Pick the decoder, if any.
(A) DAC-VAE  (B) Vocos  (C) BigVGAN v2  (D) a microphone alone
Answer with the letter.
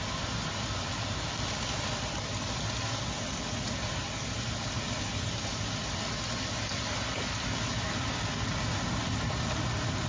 D